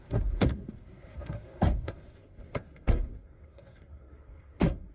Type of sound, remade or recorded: remade